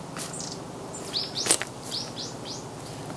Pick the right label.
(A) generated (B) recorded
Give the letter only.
B